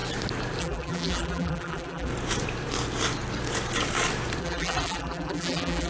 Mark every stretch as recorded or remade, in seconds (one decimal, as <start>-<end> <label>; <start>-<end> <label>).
0.0-0.6 recorded; 0.6-2.1 remade; 2.1-4.4 recorded; 4.4-5.9 remade